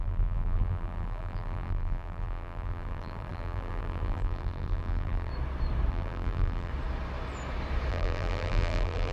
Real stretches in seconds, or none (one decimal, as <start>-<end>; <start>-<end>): 5.3-5.9; 6.7-7.9